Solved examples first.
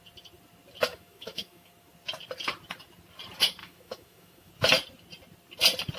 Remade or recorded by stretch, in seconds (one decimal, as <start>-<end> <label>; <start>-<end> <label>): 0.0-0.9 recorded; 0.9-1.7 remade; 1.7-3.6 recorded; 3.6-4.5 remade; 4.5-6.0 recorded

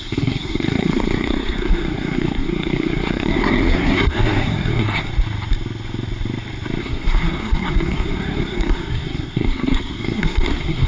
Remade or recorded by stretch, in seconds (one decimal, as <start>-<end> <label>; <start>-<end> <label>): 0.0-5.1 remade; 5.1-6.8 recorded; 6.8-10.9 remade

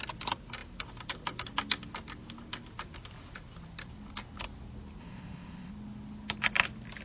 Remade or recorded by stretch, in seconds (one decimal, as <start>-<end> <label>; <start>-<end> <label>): 0.0-5.0 recorded; 5.0-5.7 remade; 5.7-7.0 recorded

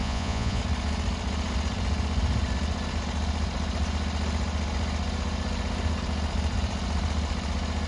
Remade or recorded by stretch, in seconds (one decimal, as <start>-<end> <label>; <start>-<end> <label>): 0.0-0.6 remade; 0.6-7.9 recorded